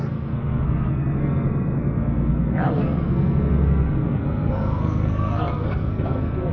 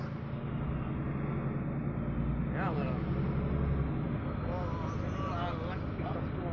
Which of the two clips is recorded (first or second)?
second